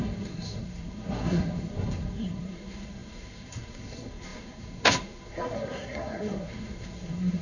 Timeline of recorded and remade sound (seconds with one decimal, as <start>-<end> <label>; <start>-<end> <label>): 0.0-7.4 remade